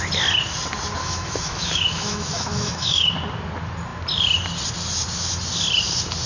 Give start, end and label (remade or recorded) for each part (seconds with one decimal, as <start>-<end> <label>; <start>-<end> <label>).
0.0-1.0 recorded; 1.0-3.1 remade; 3.1-6.3 recorded

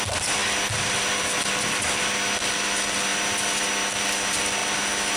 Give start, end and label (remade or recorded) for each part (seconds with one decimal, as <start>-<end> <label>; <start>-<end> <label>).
0.0-5.2 recorded

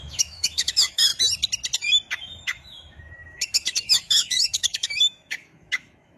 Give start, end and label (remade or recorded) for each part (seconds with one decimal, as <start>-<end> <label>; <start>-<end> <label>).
0.0-1.1 remade; 1.1-2.1 recorded; 2.1-6.2 remade